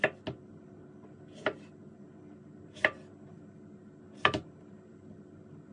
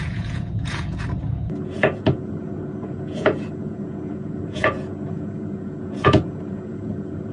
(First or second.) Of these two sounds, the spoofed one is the second